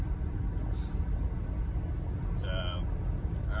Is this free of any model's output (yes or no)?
yes